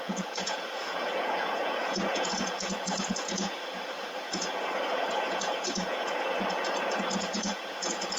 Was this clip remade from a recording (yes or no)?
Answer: yes